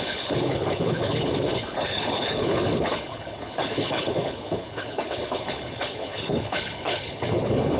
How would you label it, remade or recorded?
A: remade